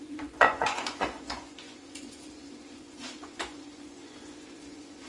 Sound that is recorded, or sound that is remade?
remade